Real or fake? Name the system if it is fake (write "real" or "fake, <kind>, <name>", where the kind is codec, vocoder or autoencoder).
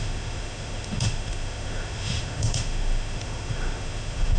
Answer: fake, autoencoder, DAC-VAE